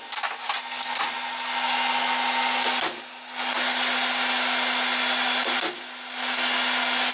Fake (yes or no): no